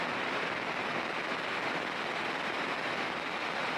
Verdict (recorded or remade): recorded